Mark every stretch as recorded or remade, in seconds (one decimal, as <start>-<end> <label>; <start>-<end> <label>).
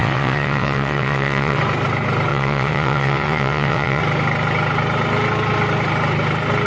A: 0.0-1.6 remade; 1.6-2.3 recorded; 2.3-4.0 remade; 4.0-6.7 recorded